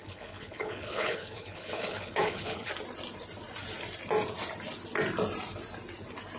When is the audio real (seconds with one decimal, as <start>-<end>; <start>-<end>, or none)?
2.7-6.4